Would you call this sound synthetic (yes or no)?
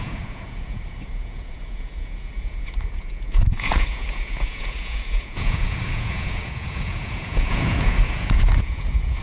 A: yes